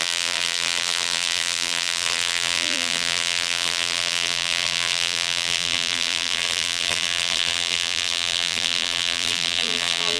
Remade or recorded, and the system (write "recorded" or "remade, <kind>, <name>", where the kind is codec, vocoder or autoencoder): remade, vocoder, BigVGAN v2